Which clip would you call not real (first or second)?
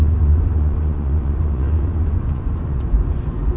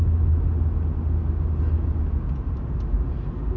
first